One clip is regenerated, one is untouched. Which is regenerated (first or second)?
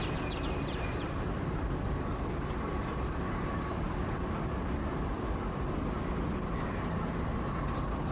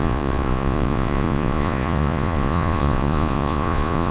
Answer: second